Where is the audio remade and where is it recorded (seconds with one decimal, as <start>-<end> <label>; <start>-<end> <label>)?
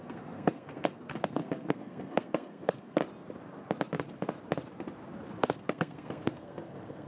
0.0-3.0 remade; 3.0-5.4 recorded; 5.4-7.1 remade